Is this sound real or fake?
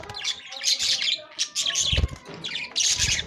real